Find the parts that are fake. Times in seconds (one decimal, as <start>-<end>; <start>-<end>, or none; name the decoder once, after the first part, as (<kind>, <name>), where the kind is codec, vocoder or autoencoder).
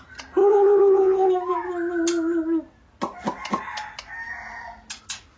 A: 0.4-1.3 (vocoder, WaveNeXt)